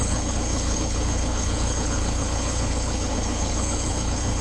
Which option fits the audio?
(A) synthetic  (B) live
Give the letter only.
A